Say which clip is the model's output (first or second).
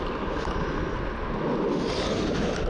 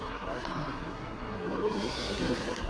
second